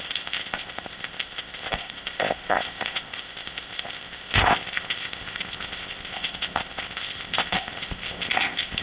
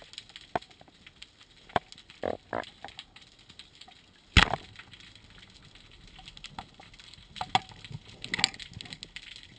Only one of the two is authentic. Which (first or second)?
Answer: second